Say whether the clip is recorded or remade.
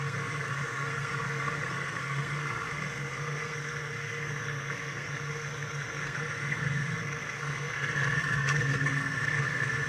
remade